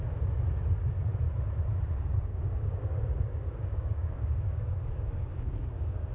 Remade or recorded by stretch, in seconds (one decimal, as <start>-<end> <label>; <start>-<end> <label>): 0.0-2.3 recorded; 2.3-6.1 remade